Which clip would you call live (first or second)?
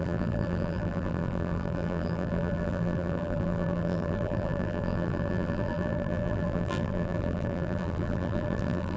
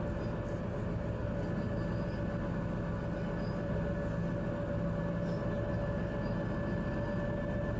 second